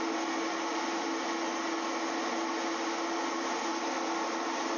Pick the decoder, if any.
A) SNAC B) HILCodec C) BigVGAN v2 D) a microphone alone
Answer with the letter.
D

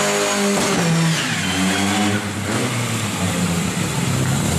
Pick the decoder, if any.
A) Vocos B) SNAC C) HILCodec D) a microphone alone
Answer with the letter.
D